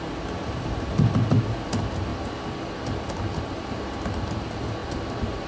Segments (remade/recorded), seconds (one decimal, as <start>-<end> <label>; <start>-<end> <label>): 0.0-5.5 recorded